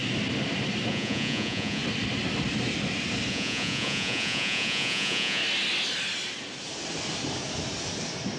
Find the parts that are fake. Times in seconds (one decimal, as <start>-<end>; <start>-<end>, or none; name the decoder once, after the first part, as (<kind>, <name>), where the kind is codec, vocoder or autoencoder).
0.9-1.8 (vocoder, Vocos); 3.3-5.4